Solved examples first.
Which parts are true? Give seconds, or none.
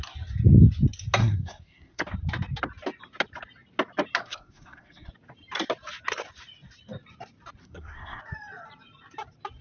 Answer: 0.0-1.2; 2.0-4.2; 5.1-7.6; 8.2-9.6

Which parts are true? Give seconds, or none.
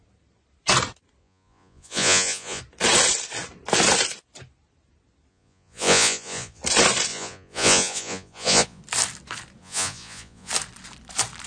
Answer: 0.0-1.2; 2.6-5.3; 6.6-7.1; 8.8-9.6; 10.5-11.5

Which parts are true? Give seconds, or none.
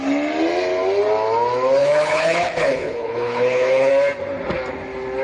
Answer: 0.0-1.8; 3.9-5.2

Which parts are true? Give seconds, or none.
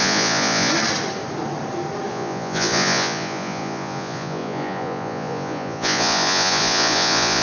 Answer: 0.7-2.1